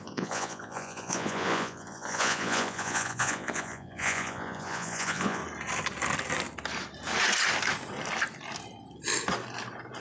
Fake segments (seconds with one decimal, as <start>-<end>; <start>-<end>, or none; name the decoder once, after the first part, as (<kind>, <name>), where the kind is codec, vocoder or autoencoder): 0.0-5.4 (vocoder, Vocos)